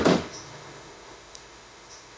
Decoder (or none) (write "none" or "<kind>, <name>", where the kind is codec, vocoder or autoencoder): autoencoder, DAC-VAE